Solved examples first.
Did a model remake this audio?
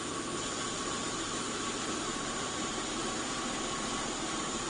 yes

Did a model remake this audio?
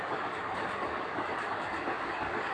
yes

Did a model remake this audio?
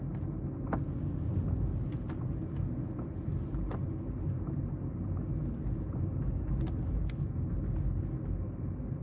no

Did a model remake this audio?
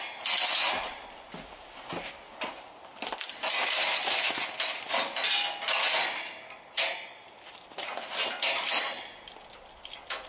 no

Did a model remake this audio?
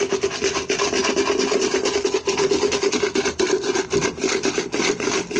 no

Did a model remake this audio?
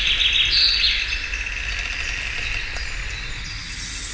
no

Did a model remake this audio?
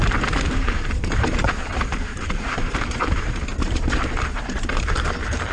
yes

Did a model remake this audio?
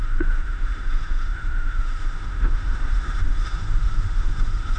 yes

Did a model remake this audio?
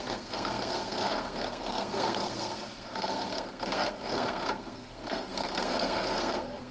yes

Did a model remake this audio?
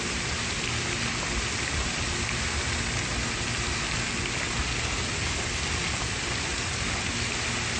no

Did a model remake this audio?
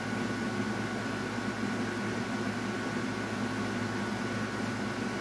no